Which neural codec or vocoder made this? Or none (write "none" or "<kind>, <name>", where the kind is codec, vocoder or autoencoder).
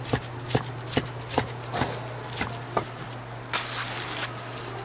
none